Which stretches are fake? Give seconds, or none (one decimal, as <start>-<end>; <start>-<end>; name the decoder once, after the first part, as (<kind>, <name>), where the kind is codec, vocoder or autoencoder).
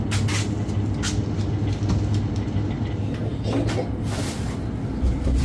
none